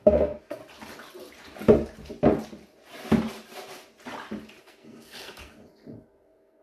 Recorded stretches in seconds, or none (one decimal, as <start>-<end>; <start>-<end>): 0.6-4.6